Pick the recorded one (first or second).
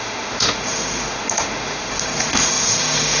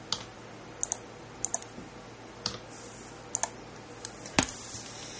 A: second